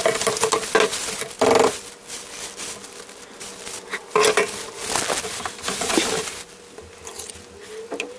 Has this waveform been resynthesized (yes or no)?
no